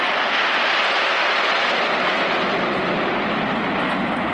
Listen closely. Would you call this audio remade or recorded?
recorded